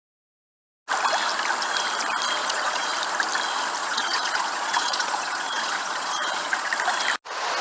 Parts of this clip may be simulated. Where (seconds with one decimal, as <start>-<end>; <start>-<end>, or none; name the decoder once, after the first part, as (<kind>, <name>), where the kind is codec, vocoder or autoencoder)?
2.4-2.9 (vocoder, Vocos); 3.8-6.7